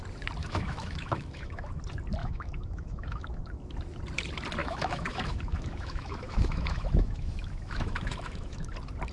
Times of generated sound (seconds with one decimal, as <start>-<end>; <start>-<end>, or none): 0.4-1.8; 2.2-3.4; 4.6-8.7